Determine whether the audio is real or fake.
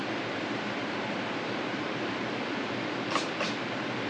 fake